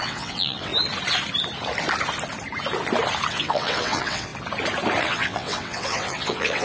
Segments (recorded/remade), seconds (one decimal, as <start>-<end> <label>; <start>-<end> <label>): 0.0-0.7 remade; 0.7-3.3 recorded; 3.3-4.3 remade; 4.3-5.0 recorded; 5.0-6.6 remade